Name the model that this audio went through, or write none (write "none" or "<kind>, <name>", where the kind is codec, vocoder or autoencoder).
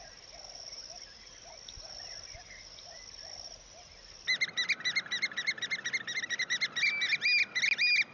none